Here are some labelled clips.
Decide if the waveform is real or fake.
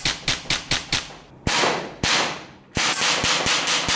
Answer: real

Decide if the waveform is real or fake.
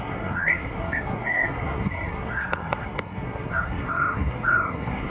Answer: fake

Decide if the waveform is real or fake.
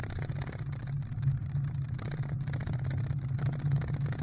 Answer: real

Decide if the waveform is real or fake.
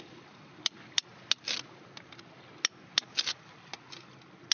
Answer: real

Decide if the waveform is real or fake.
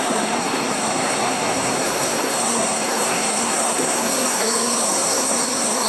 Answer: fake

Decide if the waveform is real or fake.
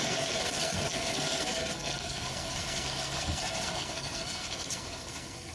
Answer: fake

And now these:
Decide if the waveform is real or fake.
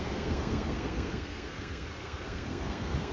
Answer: fake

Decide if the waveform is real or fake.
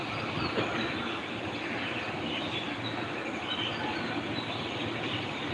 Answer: real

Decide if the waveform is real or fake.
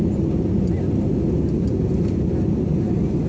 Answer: real